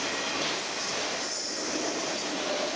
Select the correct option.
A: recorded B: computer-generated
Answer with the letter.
B